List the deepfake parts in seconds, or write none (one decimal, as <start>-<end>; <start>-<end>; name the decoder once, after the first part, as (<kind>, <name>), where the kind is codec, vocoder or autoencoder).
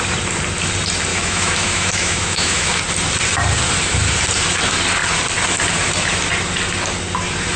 1.1-2.8 (autoencoder, DAC-VAE)